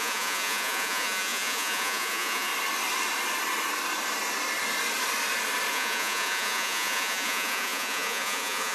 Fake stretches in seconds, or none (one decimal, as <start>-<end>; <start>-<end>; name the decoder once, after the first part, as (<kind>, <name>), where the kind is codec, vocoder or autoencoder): 0.0-2.5 (vocoder, Vocos); 5.7-8.7

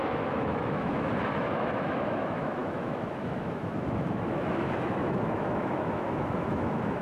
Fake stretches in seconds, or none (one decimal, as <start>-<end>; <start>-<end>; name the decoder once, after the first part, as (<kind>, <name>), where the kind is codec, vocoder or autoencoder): 0.0-7.0 (autoencoder, DAC-VAE)

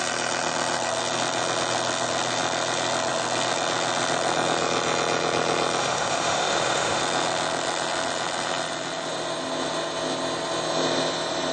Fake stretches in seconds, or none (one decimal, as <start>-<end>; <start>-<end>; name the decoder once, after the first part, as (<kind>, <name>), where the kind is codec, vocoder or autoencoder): 5.8-7.0 (autoencoder, DAC-VAE)

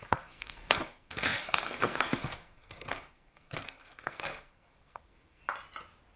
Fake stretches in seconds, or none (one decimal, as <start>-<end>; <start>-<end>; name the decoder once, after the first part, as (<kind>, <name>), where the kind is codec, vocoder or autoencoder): 0.0-5.4 (codec, SNAC)